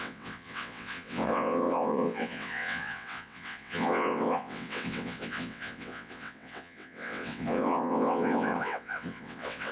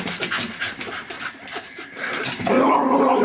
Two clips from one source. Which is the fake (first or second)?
first